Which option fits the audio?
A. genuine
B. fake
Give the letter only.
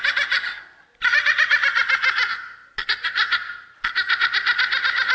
A